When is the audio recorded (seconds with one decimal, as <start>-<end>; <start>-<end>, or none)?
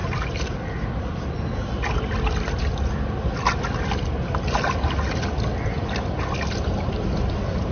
0.0-7.7